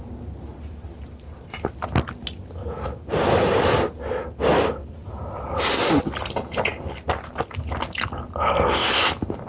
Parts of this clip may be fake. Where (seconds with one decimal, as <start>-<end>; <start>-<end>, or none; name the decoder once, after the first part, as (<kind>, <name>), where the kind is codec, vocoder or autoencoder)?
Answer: 4.8-6.0 (vocoder, BigVGAN v2)